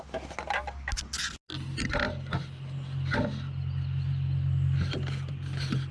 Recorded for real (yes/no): yes